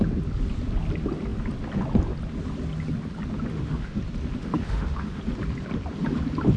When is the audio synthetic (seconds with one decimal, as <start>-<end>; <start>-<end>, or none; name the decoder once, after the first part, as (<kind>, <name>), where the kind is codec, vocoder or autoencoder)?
3.5-4.0 (autoencoder, DAC-VAE); 4.4-5.2